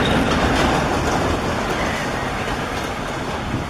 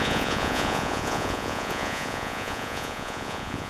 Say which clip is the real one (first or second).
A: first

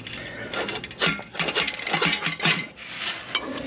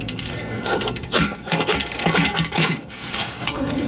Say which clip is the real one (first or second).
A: first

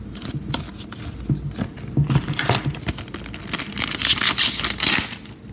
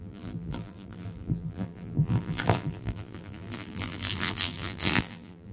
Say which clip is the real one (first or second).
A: first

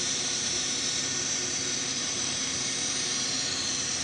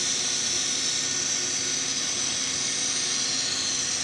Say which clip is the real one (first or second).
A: second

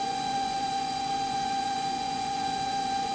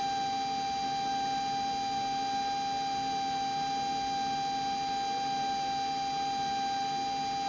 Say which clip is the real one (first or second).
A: second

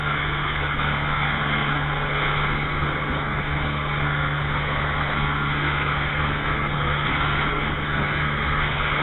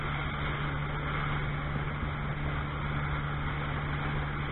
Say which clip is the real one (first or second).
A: second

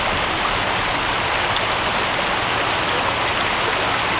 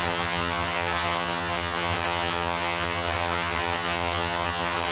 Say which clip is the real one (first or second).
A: first